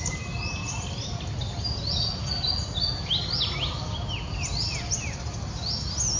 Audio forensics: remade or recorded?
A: recorded